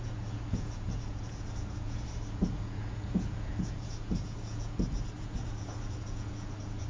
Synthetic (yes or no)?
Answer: yes